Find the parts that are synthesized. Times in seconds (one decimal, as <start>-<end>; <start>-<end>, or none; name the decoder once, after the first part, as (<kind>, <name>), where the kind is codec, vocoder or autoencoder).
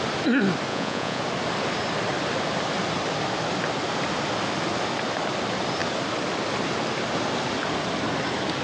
0.7-1.2 (vocoder, Vocos)